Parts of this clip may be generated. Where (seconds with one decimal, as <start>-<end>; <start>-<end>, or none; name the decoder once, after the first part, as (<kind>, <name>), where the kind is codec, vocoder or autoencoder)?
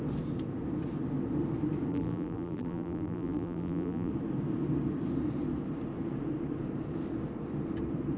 1.9-4.1 (vocoder, BigVGAN v2)